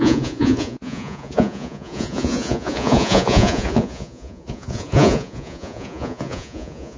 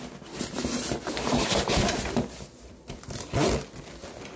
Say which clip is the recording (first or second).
second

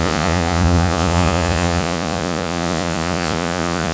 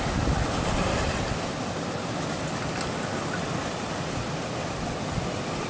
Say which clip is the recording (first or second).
second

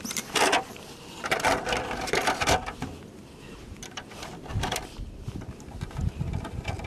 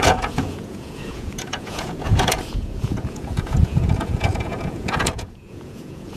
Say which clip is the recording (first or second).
first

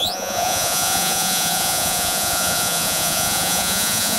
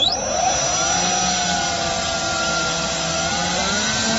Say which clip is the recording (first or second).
second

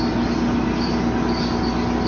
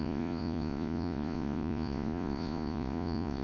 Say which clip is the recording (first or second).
first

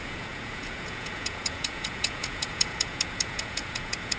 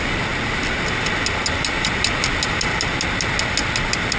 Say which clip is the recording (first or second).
second